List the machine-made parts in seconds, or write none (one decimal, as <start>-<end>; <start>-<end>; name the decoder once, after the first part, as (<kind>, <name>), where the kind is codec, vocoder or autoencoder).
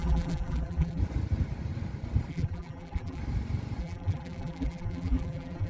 0.0-1.0 (vocoder, BigVGAN v2); 2.3-3.2; 3.8-5.7